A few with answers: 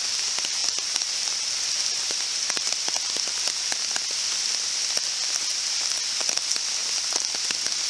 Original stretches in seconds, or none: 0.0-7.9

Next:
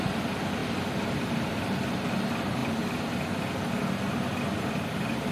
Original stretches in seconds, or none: 0.6-1.3; 2.6-4.1

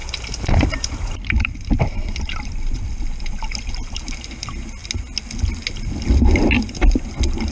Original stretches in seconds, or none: 2.9-7.5

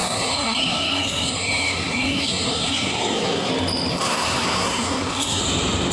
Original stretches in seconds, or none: 3.5-3.9; 5.4-5.9

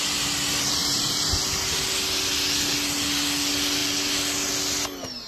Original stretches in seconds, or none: 0.0-0.8; 1.5-5.3